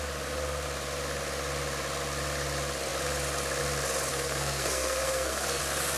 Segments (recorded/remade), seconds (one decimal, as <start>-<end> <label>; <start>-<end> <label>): 0.0-4.1 recorded; 4.1-5.6 remade; 5.6-6.0 recorded